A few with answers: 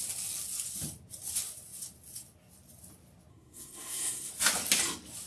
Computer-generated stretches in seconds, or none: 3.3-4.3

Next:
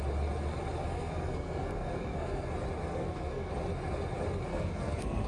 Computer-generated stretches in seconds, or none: 0.9-2.5; 2.9-3.5; 4.5-5.3

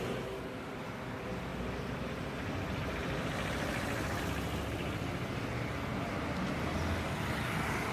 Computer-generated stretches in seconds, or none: none

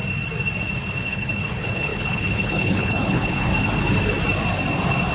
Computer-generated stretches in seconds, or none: 1.0-3.5

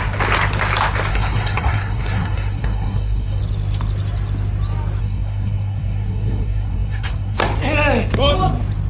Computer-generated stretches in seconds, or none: 1.1-3.4; 5.0-7.4

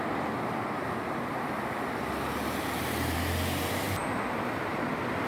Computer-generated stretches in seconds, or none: none

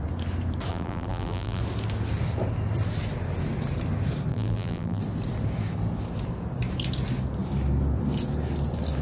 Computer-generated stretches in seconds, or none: 0.7-1.6; 4.3-5.0